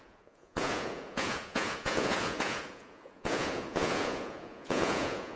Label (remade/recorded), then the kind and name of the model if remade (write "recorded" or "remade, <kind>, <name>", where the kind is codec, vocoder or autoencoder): remade, vocoder, Vocos